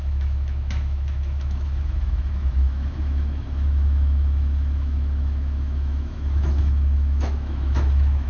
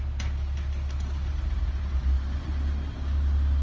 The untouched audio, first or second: second